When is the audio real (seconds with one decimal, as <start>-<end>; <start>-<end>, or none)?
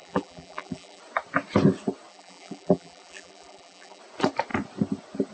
1.0-2.1; 4.0-5.3